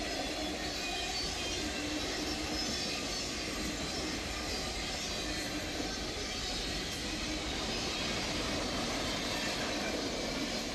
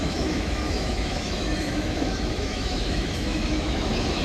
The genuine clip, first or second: first